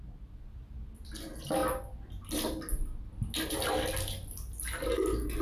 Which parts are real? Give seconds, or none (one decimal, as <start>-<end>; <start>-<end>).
0.0-5.4